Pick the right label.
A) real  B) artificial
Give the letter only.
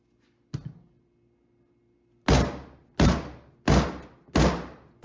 A